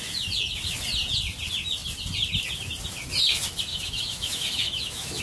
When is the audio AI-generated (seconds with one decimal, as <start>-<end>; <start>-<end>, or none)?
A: 3.7-5.2